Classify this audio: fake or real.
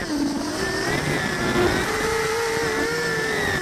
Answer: real